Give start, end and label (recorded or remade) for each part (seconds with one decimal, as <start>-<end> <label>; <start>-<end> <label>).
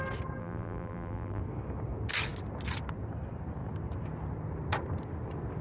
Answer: 0.0-0.4 recorded; 0.4-1.4 remade; 1.4-5.6 recorded